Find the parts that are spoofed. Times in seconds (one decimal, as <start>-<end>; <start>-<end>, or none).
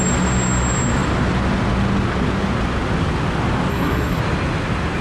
3.7-4.2